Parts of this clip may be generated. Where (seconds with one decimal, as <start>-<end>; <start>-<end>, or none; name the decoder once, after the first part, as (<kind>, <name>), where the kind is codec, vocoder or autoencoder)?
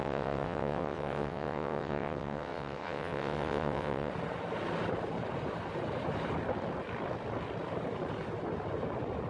0.0-4.1 (vocoder, WaveNeXt)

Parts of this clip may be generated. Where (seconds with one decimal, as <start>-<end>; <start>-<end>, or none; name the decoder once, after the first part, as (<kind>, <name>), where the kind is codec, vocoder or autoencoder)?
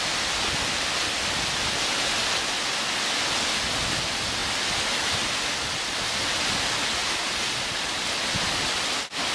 none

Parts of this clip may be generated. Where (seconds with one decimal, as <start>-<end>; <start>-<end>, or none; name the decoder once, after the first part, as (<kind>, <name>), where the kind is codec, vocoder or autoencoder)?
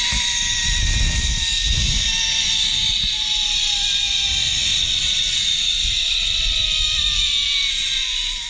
4.6-6.6 (vocoder, WaveNeXt)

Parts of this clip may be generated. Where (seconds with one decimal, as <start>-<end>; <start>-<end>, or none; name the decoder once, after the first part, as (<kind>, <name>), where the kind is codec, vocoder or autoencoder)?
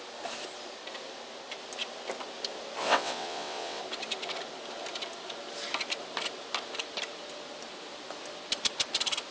2.8-3.8 (vocoder, WaveNeXt)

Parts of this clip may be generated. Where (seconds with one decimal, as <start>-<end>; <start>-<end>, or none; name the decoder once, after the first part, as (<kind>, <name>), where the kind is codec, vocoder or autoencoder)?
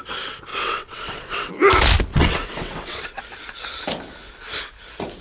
0.5-1.5 (vocoder, WaveNeXt); 2.1-3.2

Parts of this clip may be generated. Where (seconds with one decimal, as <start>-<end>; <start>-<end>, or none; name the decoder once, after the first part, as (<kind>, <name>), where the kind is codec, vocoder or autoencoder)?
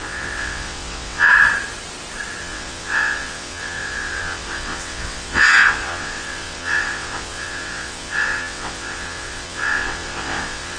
0.0-1.3 (vocoder, WaveNeXt); 2.4-10.8